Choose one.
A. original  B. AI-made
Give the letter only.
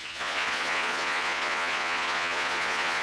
B